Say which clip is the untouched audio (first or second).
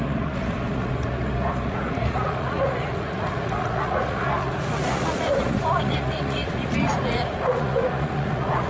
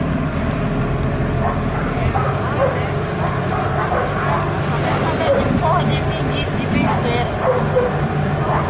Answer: second